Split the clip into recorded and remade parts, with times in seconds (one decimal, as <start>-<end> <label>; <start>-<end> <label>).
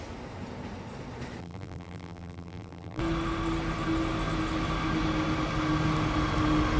0.0-1.4 recorded; 1.4-3.0 remade; 3.0-6.8 recorded